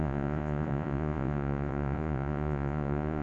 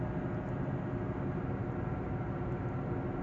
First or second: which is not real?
first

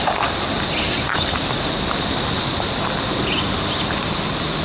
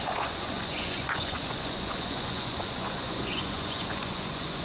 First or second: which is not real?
second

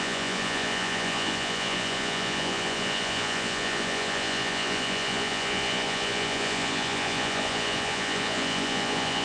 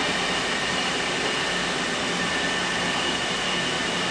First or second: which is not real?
first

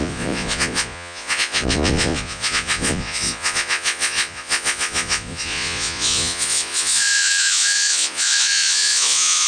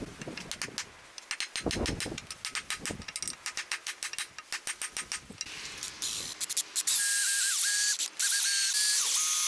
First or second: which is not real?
first